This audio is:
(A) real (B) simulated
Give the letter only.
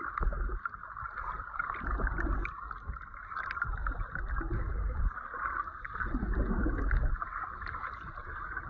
A